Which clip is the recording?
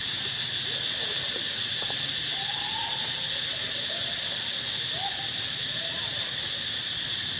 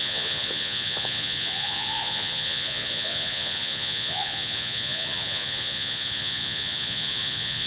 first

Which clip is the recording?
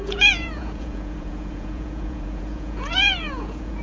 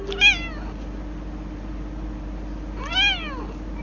second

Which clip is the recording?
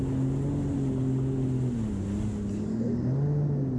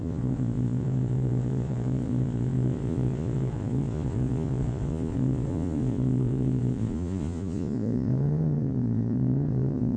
first